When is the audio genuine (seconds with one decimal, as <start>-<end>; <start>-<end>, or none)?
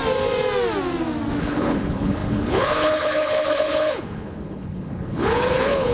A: 0.0-1.4